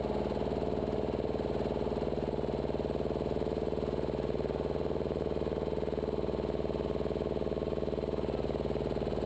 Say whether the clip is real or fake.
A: real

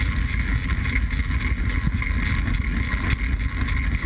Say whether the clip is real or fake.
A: real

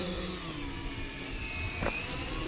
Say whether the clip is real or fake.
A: real